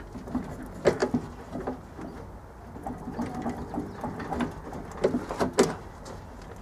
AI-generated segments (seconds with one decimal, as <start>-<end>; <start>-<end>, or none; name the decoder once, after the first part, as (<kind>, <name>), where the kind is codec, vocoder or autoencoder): none